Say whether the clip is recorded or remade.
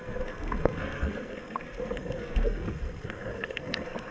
remade